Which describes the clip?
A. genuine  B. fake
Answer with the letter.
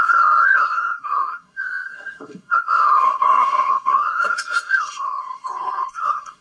B